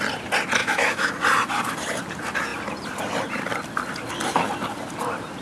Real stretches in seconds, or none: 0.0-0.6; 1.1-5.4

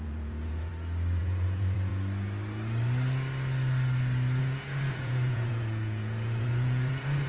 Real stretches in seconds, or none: 0.7-1.2; 1.9-4.4

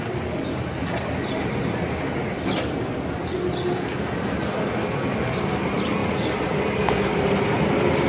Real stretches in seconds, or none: 0.0-8.1

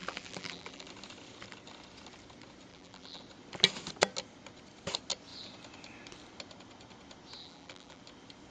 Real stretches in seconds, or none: 0.9-2.7; 3.2-7.4; 8.0-8.5

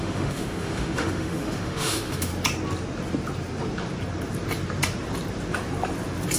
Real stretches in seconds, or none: 2.3-6.4

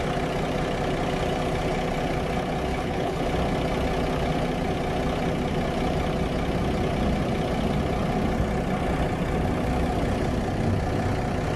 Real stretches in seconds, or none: 0.0-2.7; 3.2-11.6

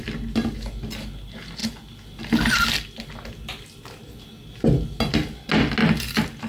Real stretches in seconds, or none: 0.0-6.5